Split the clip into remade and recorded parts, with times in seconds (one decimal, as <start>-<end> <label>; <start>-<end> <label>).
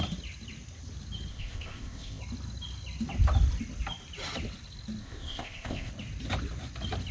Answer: 0.0-1.3 recorded; 1.3-2.2 remade; 2.2-5.0 recorded; 5.0-5.9 remade; 5.9-7.1 recorded